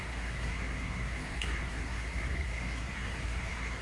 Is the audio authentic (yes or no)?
no